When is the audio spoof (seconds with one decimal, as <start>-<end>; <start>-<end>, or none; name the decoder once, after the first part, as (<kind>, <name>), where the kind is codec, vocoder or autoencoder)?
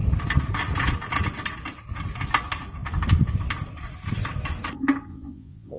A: 5.1-5.8 (vocoder, Vocos)